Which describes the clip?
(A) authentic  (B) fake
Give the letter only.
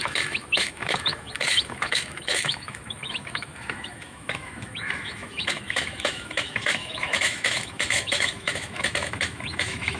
B